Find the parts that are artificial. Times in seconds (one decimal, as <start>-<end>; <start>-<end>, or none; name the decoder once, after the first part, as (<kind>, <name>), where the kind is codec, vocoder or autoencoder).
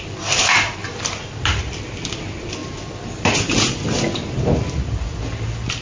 none